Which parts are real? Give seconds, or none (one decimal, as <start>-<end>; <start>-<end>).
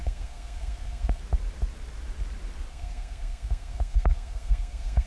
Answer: 1.2-2.7